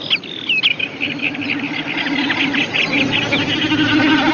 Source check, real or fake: real